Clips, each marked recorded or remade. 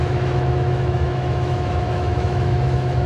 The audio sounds remade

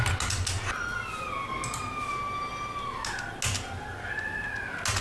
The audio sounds recorded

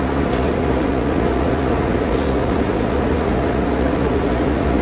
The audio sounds remade